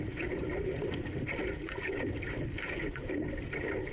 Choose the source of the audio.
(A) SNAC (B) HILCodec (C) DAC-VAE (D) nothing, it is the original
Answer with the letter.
D